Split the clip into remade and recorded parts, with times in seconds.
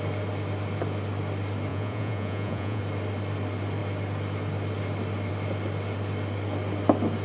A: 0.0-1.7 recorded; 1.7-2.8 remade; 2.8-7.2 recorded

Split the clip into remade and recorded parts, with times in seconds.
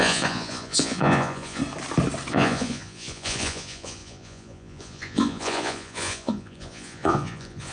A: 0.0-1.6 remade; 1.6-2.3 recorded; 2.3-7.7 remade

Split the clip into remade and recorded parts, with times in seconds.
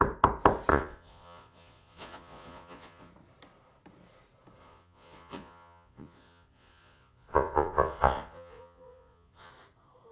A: 0.0-0.7 recorded; 0.7-3.1 remade; 3.1-4.6 recorded; 4.6-9.5 remade; 9.5-10.1 recorded